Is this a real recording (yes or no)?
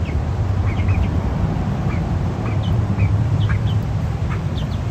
no